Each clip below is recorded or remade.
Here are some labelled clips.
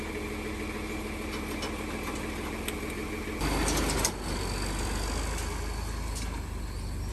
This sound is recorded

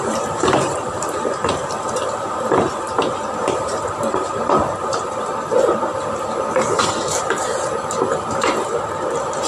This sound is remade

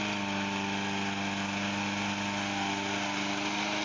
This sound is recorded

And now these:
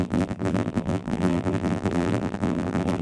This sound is remade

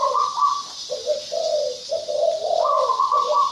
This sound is recorded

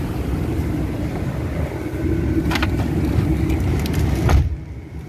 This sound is recorded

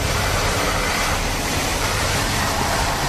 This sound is remade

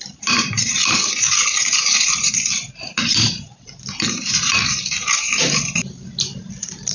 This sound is remade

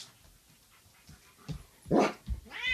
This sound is recorded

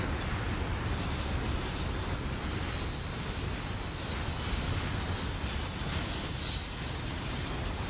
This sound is recorded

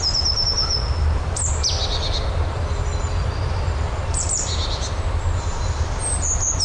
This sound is remade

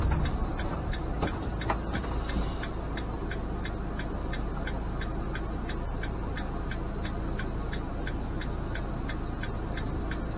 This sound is recorded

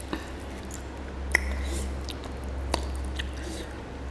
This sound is recorded